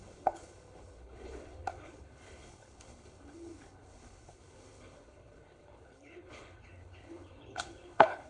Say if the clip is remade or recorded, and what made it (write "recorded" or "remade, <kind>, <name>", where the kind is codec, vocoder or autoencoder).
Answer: remade, codec, HILCodec